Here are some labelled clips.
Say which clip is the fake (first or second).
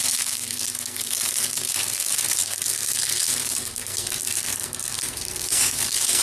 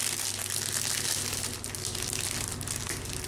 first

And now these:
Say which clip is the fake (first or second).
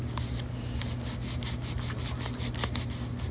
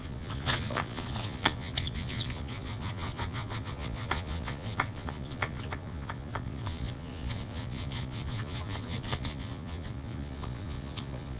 second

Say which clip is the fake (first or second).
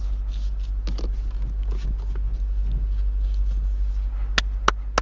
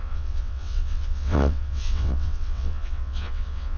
second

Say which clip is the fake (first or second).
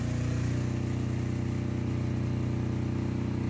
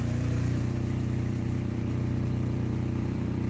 second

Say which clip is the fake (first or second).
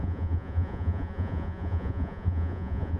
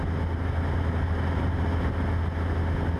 first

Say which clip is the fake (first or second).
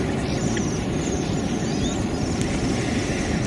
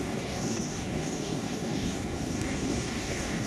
second